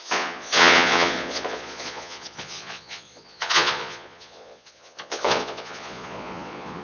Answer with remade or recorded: remade